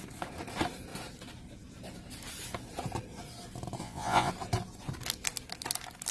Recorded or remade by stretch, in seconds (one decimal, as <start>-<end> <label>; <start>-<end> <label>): 0.0-3.8 recorded; 3.8-4.3 remade; 4.3-6.1 recorded